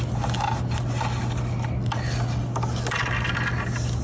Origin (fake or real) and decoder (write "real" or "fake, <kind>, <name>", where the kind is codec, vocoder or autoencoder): real